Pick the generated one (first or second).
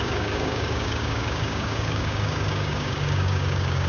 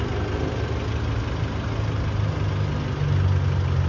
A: first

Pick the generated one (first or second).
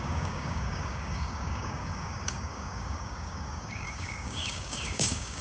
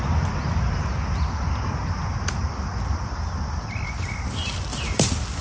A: first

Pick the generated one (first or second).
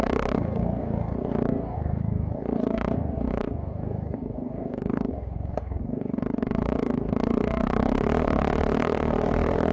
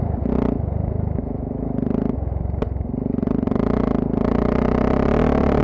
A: first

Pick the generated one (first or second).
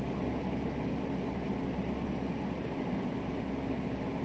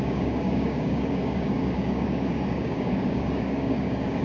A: second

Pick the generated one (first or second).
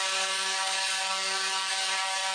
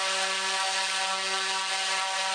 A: first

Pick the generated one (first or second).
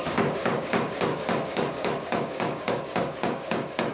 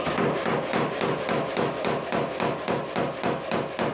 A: first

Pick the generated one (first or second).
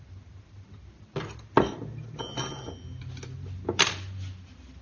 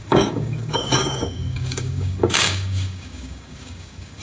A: second